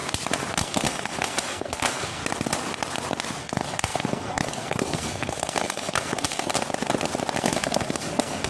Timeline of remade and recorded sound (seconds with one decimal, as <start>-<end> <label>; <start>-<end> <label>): 0.0-0.6 recorded; 0.6-2.2 remade; 2.2-3.4 recorded; 3.4-6.5 remade; 6.5-7.4 recorded; 7.4-8.5 remade

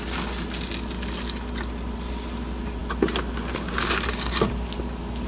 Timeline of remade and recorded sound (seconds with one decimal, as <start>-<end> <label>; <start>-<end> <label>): 0.0-5.3 recorded

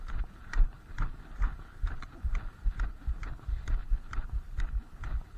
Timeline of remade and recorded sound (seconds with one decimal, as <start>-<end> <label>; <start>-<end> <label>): 0.0-3.8 recorded; 3.8-4.6 remade; 4.6-5.4 recorded

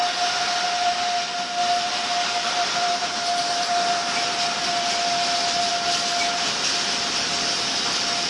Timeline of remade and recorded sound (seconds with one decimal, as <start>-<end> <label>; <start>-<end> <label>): 0.0-8.3 recorded

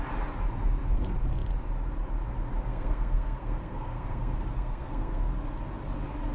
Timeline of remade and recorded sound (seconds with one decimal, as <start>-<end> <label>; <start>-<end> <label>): 0.0-2.7 recorded; 2.7-5.3 remade; 5.3-6.3 recorded

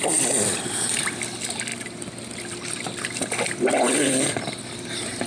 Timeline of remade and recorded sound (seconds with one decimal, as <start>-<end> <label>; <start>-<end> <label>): 0.0-5.3 recorded